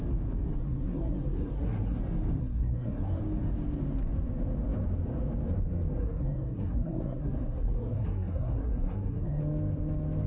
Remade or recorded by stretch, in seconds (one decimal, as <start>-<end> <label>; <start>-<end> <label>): 0.0-0.6 recorded; 0.6-2.0 remade; 2.0-2.4 recorded; 2.4-3.2 remade; 3.2-6.0 recorded; 6.0-9.4 remade; 9.4-10.3 recorded